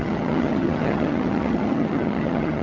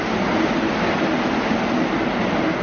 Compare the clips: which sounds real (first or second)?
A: second